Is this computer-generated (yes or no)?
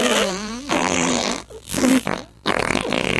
yes